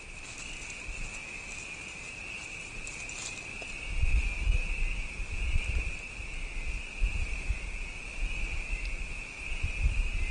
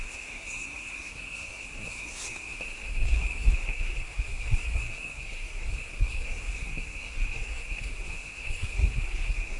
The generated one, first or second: second